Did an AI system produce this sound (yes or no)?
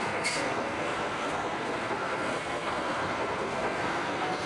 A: yes